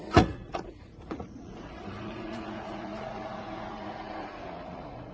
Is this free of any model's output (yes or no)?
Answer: no